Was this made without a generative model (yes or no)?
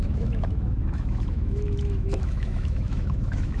no